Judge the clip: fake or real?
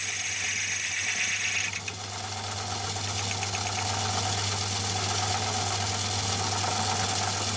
real